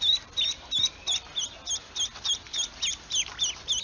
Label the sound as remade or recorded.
recorded